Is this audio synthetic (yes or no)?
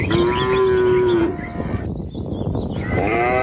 no